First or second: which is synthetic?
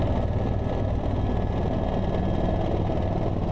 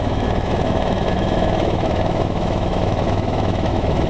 second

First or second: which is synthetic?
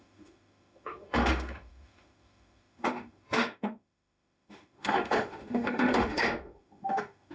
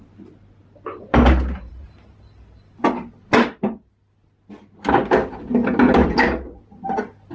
first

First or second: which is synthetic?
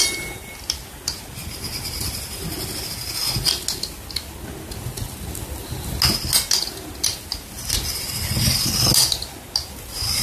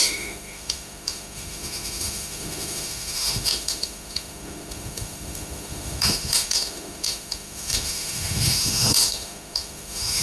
second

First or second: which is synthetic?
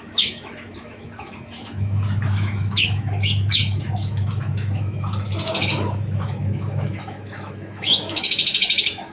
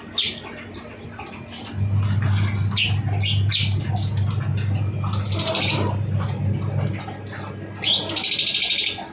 first